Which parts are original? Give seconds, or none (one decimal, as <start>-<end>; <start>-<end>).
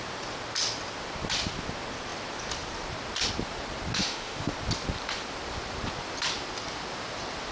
0.0-4.0; 4.5-7.5